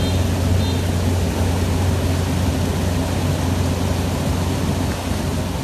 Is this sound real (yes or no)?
yes